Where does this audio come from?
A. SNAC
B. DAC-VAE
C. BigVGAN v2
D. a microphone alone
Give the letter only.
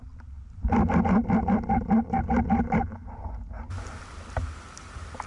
D